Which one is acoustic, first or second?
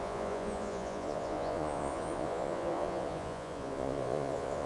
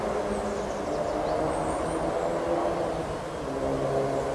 second